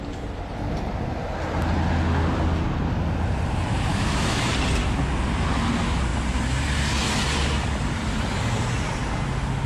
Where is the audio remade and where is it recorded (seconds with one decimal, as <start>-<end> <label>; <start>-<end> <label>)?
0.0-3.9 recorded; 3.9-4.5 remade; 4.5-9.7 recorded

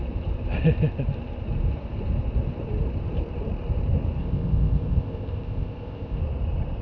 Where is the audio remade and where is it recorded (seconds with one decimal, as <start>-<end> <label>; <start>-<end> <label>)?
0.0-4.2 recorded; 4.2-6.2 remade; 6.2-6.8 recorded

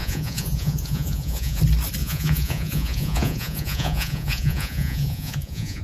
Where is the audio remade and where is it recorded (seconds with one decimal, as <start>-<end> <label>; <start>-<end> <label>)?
0.0-1.6 remade; 1.6-2.0 recorded; 2.0-5.8 remade

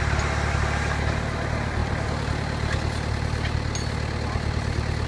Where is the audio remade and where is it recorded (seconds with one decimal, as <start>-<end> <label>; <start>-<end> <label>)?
0.0-1.8 recorded; 1.8-2.4 remade; 2.4-5.1 recorded